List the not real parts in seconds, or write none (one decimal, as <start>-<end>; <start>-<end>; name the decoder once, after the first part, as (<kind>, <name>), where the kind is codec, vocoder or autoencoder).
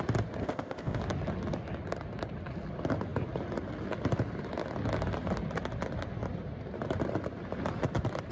0.4-1.0 (codec, ZipCodec)